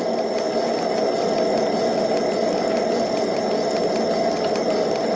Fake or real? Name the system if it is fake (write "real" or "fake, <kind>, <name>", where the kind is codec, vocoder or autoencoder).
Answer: real